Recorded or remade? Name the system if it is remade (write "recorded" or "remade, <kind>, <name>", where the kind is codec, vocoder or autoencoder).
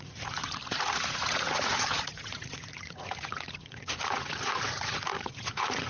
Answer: remade, vocoder, Vocos